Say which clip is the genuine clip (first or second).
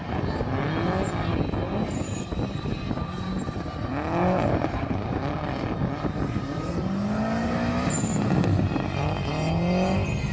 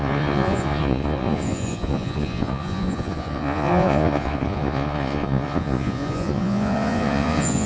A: first